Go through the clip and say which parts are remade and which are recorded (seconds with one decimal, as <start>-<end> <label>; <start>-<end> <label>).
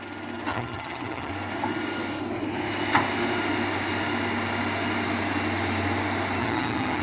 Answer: 0.0-0.5 recorded; 0.5-1.3 remade; 1.3-6.4 recorded; 6.4-7.0 remade